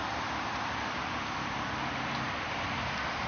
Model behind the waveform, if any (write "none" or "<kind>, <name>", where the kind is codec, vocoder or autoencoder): vocoder, BigVGAN v2